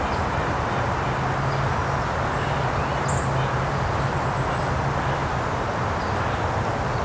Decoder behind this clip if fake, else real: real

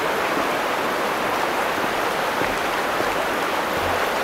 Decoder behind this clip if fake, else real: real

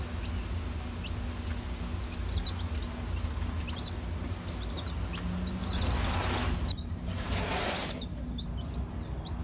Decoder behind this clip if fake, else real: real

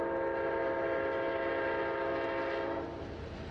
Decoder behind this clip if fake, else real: real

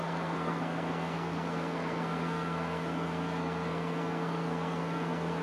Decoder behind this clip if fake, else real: fake, codec, SNAC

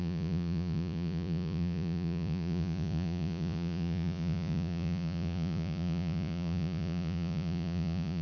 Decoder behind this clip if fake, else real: fake, vocoder, Vocos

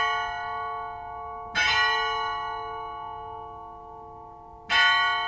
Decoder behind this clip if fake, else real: real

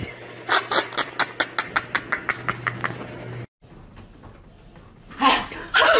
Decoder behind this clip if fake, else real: real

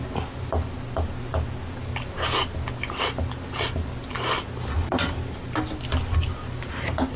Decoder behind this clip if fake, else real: real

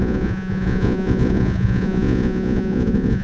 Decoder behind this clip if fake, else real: fake, vocoder, Vocos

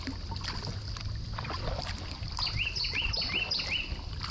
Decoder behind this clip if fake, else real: real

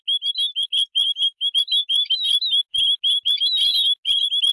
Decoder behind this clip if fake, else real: real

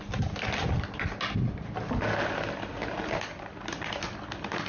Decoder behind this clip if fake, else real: real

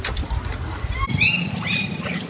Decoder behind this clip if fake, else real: real